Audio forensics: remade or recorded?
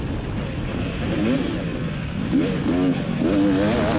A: recorded